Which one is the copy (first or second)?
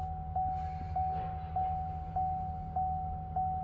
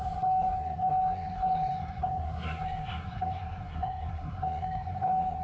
second